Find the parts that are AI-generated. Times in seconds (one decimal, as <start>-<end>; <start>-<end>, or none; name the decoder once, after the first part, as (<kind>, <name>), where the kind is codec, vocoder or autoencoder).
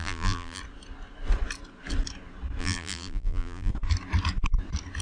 0.0-0.6 (vocoder, BigVGAN v2); 2.6-3.7